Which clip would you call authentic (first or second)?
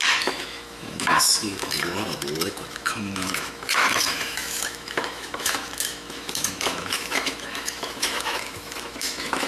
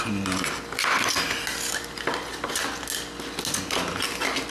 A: second